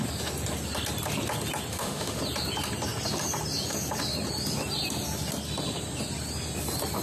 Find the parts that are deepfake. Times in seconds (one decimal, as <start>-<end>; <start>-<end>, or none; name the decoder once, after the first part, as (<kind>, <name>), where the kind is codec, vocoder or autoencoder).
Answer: 1.7-2.2 (autoencoder, DAC-VAE)